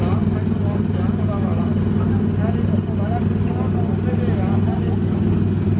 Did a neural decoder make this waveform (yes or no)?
no